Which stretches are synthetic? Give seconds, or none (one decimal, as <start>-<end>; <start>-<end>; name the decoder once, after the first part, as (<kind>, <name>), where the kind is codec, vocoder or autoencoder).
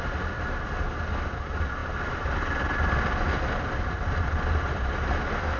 none